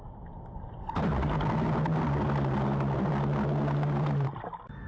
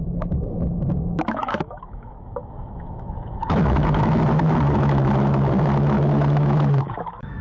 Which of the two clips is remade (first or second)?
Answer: second